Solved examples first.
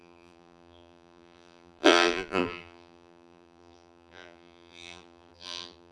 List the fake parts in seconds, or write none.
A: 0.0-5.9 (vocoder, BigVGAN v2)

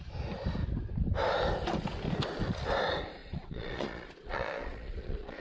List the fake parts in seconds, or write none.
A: 3.2-5.4 (vocoder, Vocos)

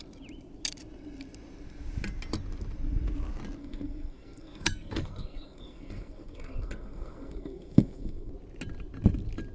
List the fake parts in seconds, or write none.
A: 3.6-8.3 (codec, SNAC)

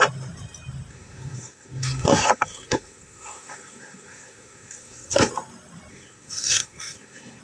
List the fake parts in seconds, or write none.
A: 0.9-5.3 (codec, SNAC); 5.9-7.4

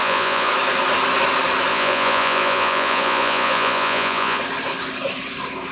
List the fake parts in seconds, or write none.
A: 0.0-0.5 (vocoder, Vocos); 1.7-4.4

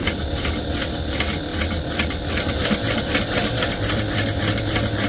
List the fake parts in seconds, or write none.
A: 0.0-0.6 (vocoder, BigVGAN v2); 1.5-3.2

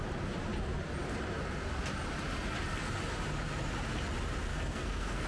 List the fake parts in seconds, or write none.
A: 4.5-5.3 (codec, SNAC)

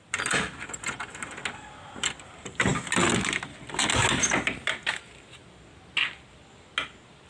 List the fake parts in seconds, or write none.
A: none